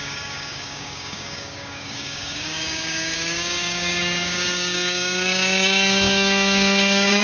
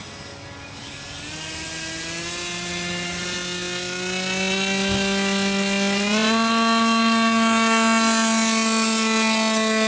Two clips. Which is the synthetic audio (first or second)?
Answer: first